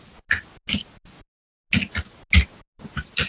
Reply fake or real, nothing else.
real